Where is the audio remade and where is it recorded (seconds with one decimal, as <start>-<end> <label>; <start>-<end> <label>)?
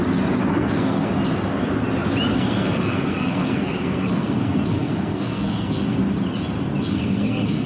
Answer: 0.0-0.5 recorded; 0.5-1.1 remade; 1.1-2.3 recorded; 2.3-6.0 remade; 6.0-6.8 recorded; 6.8-7.7 remade